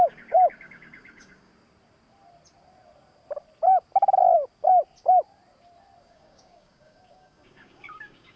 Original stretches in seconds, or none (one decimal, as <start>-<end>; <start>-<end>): 1.5-6.0